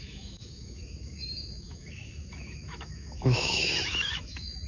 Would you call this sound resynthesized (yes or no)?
yes